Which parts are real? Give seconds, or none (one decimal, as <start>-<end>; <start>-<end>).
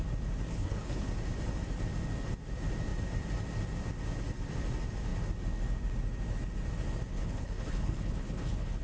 0.0-0.5; 1.1-7.1